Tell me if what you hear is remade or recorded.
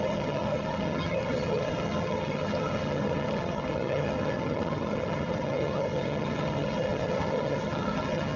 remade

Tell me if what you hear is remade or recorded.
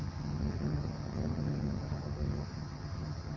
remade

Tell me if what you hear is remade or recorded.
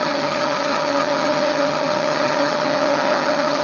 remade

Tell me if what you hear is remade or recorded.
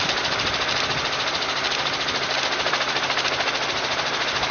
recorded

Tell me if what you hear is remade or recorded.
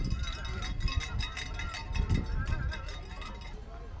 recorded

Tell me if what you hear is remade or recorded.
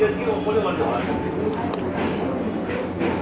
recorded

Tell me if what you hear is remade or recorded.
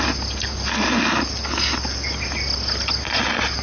recorded